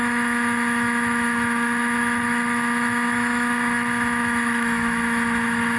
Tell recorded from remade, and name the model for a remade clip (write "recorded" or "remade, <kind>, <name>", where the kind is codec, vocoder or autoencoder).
remade, autoencoder, DAC-VAE